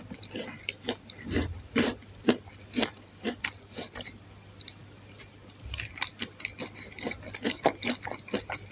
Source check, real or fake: fake